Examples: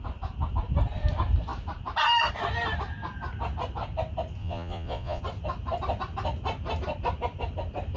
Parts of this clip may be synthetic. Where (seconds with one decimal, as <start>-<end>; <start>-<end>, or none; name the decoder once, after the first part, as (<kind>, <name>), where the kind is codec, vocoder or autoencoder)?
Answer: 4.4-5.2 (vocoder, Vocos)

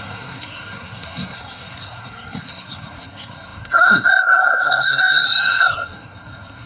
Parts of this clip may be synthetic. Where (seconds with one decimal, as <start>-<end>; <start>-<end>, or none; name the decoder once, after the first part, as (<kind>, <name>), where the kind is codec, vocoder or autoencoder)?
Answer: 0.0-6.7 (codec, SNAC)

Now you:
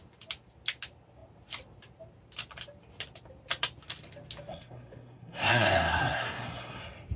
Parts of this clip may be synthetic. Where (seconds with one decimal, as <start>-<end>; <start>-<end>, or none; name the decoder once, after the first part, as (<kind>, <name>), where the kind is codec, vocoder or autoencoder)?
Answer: 4.5-6.8 (codec, SNAC)